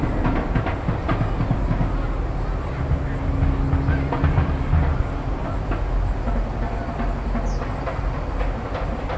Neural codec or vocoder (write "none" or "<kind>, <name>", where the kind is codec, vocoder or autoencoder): none